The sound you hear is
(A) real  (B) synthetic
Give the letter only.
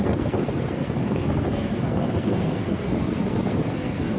B